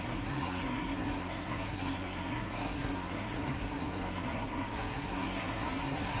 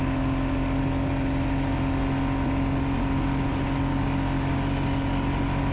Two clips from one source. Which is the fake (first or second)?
first